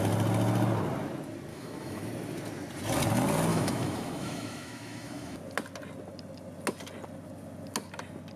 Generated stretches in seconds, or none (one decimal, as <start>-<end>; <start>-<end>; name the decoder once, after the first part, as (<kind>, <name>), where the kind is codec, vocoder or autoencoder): 1.5-2.1 (autoencoder, DAC-VAE); 3.5-5.4